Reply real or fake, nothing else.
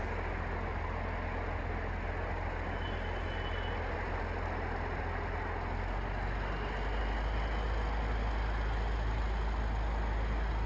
real